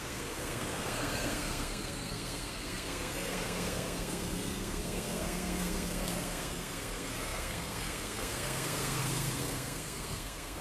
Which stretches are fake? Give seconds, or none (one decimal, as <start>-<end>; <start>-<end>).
0.0-10.6